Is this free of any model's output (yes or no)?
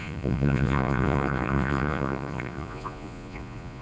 no